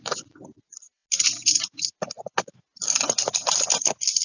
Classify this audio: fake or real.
real